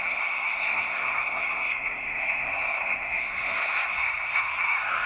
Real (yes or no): no